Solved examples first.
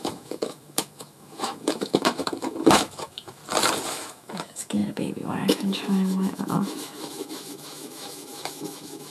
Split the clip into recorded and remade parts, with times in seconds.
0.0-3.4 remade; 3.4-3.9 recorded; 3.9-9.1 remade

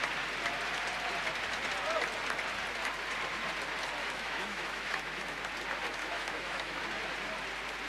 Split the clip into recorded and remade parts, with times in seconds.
0.0-4.0 recorded; 4.0-5.4 remade; 5.4-6.0 recorded; 6.0-6.8 remade; 6.8-7.9 recorded

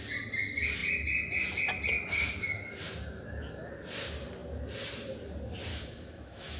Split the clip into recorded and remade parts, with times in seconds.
0.0-5.7 recorded; 5.7-6.6 remade

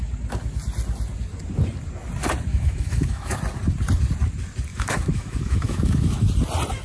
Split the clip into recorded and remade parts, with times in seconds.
0.0-2.5 recorded; 2.5-3.4 remade; 3.4-4.7 recorded; 4.7-6.3 remade; 6.3-6.8 recorded